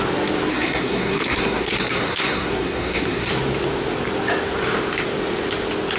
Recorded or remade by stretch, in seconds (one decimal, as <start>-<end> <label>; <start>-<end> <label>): 0.0-0.5 recorded; 0.5-3.3 remade; 3.3-6.0 recorded